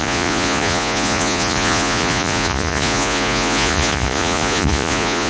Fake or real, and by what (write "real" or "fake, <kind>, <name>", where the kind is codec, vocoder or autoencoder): fake, vocoder, Vocos